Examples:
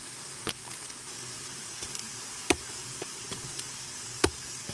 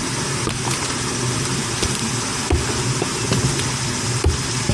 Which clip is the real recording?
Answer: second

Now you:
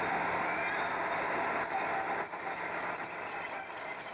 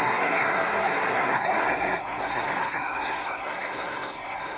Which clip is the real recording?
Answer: first